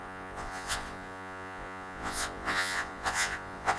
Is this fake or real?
fake